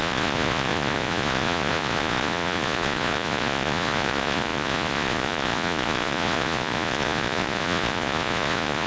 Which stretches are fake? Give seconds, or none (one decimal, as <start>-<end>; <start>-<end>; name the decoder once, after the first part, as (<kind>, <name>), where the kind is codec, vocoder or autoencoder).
0.0-8.9 (vocoder, Vocos)